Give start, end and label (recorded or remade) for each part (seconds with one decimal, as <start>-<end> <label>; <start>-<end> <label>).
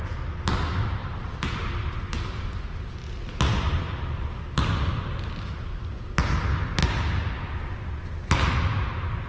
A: 0.0-1.0 recorded; 1.0-2.0 remade; 2.0-6.8 recorded; 6.8-7.3 remade; 7.3-9.3 recorded